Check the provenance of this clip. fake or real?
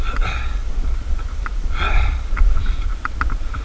real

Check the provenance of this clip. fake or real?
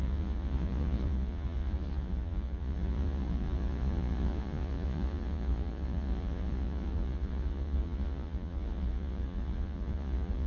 fake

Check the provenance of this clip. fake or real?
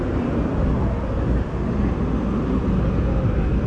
real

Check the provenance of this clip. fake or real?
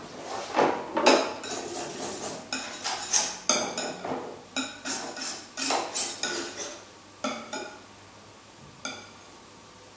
real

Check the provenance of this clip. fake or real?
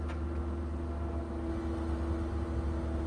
real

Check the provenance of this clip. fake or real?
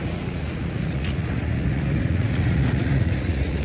fake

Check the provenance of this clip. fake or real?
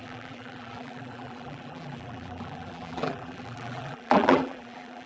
fake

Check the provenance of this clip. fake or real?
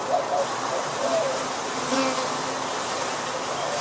real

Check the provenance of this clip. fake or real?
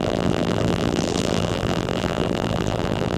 fake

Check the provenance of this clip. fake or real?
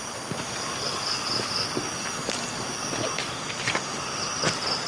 real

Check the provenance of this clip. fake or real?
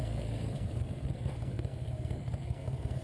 fake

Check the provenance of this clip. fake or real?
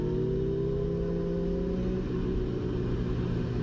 real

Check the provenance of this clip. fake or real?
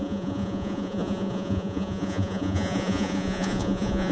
fake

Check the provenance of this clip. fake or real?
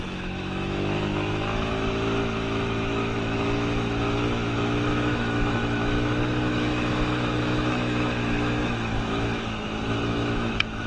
fake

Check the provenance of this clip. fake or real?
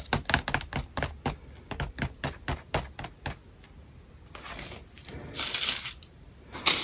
real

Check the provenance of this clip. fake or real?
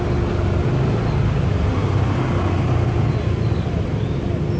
real